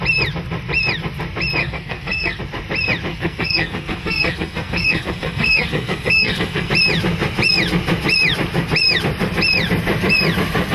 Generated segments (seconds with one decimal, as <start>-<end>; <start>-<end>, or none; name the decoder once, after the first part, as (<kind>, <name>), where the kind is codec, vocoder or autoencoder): 1.6-2.4 (codec, SNAC); 3.1-6.7